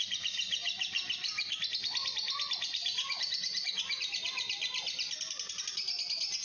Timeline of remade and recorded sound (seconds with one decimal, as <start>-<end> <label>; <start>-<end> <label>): 0.0-6.4 recorded